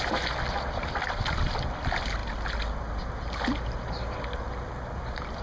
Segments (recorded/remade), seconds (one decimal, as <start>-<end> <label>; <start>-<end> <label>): 0.0-5.4 recorded